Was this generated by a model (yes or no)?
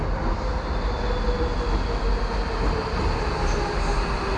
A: no